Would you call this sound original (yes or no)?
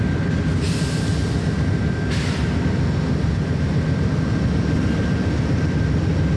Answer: yes